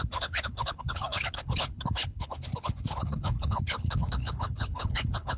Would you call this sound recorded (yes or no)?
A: no